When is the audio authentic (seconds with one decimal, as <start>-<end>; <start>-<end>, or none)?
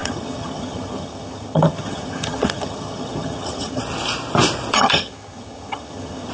3.8-4.7